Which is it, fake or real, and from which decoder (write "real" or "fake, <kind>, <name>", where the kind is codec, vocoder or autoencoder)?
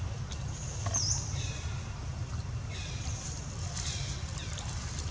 real